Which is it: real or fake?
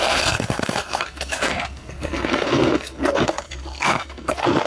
fake